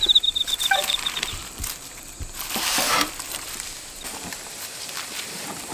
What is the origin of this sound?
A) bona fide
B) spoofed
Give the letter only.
B